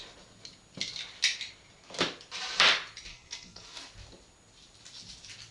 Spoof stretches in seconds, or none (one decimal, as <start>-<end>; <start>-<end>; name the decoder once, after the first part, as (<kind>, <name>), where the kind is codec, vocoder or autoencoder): 3.1-3.8 (codec, SNAC)